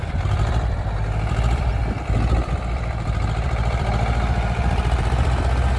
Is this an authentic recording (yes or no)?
no